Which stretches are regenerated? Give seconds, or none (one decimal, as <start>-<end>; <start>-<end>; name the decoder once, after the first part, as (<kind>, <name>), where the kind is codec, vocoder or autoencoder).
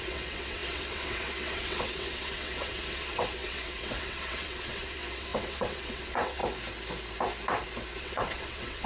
0.0-6.4 (vocoder, WaveNeXt); 8.0-8.9